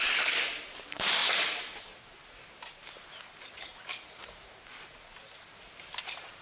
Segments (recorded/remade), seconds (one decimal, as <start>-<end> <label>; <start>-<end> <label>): 0.0-6.4 remade

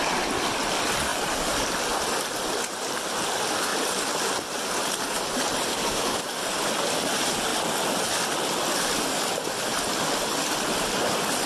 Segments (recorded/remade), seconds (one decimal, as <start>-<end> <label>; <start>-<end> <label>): 0.0-5.7 recorded; 5.7-6.2 remade; 6.2-11.5 recorded

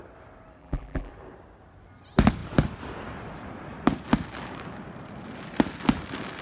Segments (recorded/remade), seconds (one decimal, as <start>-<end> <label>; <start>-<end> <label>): 0.0-0.6 recorded; 0.6-1.1 remade; 1.1-6.4 recorded

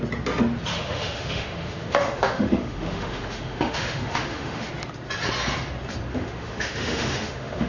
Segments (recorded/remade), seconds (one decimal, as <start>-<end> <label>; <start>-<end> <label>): 0.0-0.7 recorded; 0.7-4.7 remade; 4.7-6.1 recorded; 6.1-7.7 remade

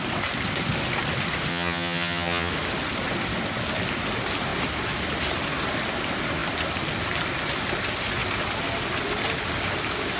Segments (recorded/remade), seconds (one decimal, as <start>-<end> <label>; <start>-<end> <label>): 0.0-1.5 recorded; 1.5-2.5 remade; 2.5-10.2 recorded

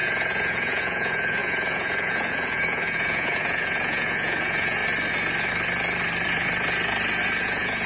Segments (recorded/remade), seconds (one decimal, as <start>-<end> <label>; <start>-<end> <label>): 0.0-4.8 remade; 4.8-7.4 recorded; 7.4-7.9 remade